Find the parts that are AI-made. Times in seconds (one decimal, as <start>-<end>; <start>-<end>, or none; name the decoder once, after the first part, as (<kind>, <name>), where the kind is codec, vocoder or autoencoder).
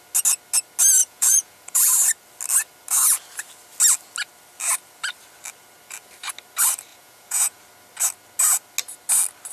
1.0-1.9 (vocoder, Vocos); 6.9-7.6